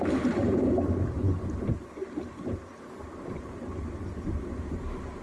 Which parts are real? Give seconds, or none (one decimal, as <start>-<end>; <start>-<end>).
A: none